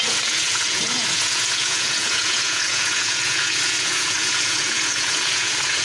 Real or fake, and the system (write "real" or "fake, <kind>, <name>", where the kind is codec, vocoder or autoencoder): fake, vocoder, Vocos